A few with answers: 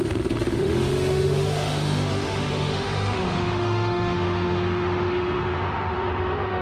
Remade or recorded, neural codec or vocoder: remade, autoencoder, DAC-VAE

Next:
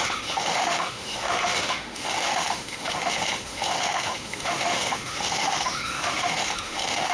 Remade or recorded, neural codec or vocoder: remade, autoencoder, DAC-VAE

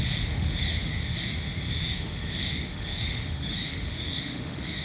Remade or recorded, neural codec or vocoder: remade, autoencoder, DAC-VAE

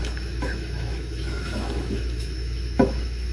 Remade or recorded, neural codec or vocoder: remade, autoencoder, DAC-VAE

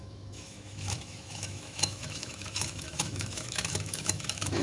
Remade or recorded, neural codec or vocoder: remade, autoencoder, DAC-VAE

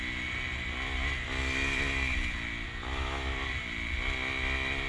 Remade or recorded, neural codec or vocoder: recorded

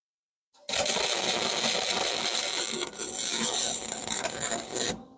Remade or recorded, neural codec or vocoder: recorded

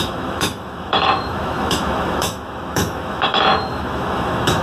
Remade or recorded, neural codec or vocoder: remade, autoencoder, DAC-VAE